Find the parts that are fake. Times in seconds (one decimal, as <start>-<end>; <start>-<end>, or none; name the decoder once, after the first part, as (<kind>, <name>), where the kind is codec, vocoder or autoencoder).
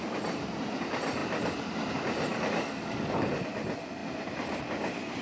2.3-3.3 (codec, DAC)